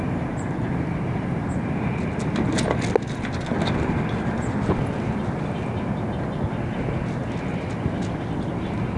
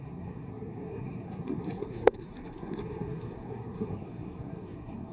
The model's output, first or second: second